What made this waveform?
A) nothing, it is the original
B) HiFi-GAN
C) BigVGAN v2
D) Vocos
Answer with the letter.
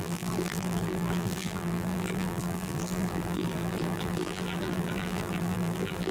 C